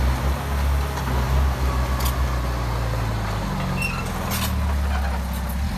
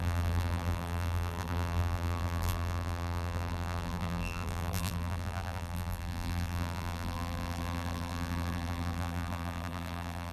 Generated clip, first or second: second